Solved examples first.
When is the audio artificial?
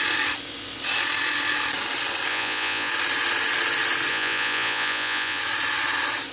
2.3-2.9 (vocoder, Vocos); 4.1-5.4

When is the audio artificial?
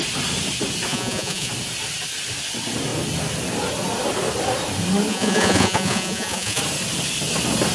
0.9-1.5 (vocoder, Vocos); 5.1-6.6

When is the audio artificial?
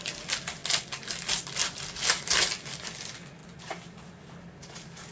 none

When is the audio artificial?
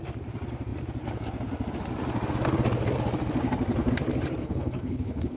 4.4-5.4 (codec, HILCodec)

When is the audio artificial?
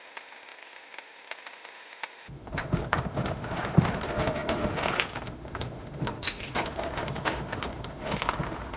0.0-8.8 (autoencoder, DAC-VAE)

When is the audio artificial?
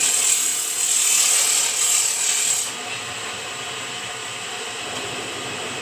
4.2-4.8 (vocoder, BigVGAN v2)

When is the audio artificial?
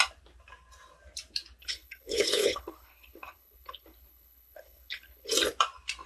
1.6-5.3 (codec, HILCodec)